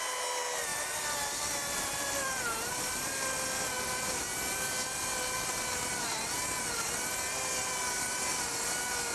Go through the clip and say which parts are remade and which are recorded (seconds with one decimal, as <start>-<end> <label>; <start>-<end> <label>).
0.0-0.7 recorded; 0.7-4.2 remade; 4.2-9.1 recorded